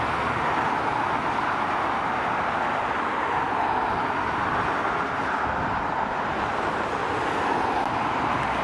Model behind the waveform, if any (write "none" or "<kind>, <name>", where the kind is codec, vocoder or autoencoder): none